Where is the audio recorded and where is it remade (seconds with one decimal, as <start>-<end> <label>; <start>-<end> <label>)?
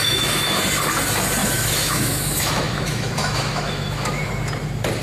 0.0-0.6 remade; 0.6-1.4 recorded; 1.4-4.3 remade; 4.3-5.0 recorded